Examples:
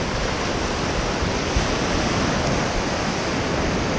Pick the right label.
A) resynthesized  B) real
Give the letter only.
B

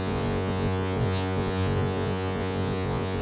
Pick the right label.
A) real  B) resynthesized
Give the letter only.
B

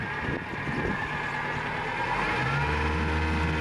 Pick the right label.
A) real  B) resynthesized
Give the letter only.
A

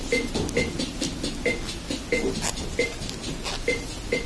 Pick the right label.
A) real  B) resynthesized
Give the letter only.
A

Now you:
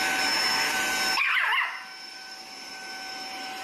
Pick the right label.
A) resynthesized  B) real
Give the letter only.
A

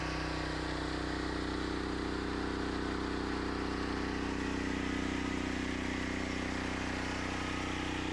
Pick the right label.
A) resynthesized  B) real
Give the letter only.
B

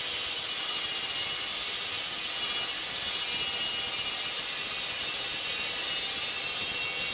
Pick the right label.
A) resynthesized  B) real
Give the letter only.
B